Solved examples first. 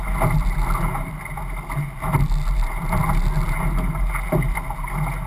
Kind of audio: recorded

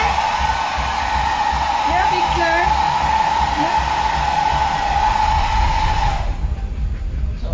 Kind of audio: recorded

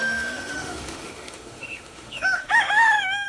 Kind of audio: remade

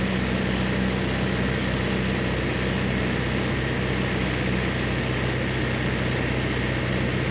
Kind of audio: recorded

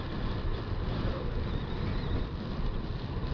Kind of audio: recorded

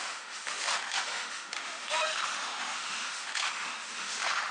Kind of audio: remade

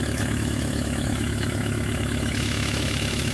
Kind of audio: remade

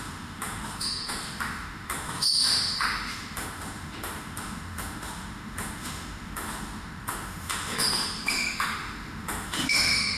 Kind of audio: remade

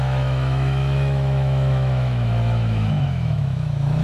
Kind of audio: remade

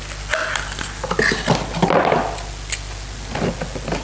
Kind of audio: recorded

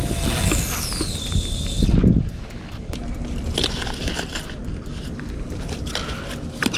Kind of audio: recorded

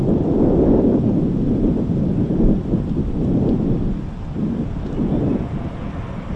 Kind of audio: recorded